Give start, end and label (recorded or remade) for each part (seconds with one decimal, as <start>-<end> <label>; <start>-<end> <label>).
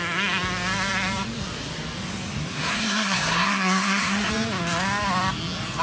0.0-2.4 recorded; 2.4-4.3 remade; 4.3-5.8 recorded